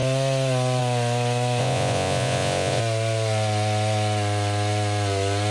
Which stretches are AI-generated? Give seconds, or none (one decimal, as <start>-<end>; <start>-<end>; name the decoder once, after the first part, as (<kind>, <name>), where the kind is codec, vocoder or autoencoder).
1.6-2.8 (vocoder, Vocos)